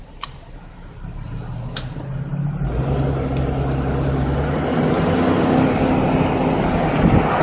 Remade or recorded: recorded